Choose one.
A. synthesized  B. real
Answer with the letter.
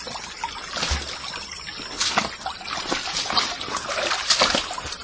B